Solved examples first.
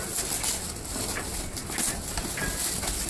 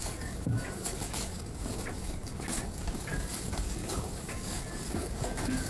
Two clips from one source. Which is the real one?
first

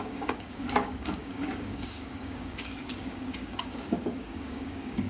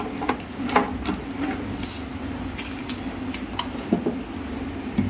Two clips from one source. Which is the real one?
second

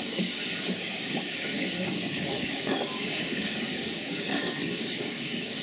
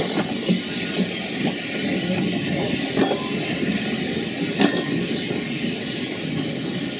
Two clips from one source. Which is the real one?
second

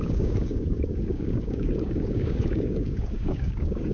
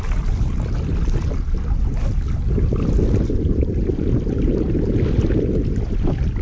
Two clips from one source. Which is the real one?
second